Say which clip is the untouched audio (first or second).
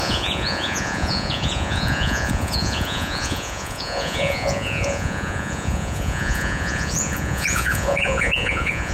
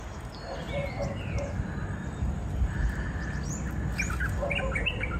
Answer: second